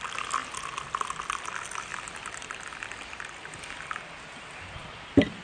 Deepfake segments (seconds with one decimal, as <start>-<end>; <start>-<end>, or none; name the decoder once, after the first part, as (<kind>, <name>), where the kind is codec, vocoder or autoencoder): none